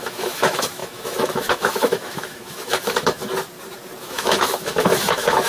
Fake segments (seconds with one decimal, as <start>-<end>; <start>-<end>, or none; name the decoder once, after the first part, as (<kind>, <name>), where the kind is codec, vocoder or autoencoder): 0.0-3.2 (autoencoder, DAC-VAE); 4.0-5.5

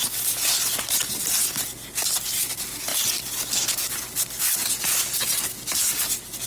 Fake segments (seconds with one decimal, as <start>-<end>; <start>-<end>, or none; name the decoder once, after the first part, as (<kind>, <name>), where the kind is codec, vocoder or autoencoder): none

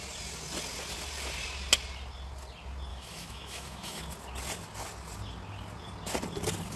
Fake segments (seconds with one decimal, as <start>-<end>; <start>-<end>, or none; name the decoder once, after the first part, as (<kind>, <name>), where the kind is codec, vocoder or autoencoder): 2.9-4.0 (autoencoder, DAC-VAE)

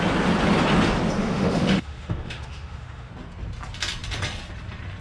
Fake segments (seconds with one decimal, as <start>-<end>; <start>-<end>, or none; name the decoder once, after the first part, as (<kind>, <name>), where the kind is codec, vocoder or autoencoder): 1.2-3.1 (autoencoder, DAC-VAE)

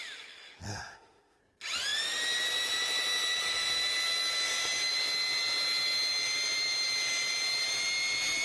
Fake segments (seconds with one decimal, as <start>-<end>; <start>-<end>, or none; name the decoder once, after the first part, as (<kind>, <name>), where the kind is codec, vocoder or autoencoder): 0.7-1.4 (autoencoder, DAC-VAE)

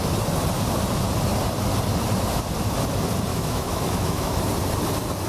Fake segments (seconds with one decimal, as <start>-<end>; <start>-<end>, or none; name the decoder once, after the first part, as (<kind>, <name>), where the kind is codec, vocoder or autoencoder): 3.3-4.4 (autoencoder, DAC-VAE)

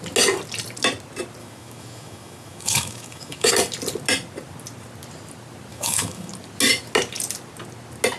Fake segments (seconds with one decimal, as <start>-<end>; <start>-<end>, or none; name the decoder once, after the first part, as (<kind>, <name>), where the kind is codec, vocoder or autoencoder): 1.4-3.5 (autoencoder, DAC-VAE); 5.7-6.3